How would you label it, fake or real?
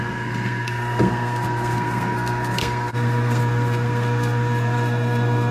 fake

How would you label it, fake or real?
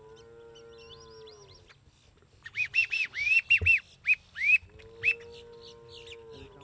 real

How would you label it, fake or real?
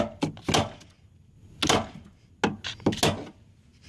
real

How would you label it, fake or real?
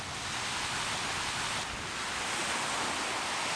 real